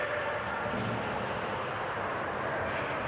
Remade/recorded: recorded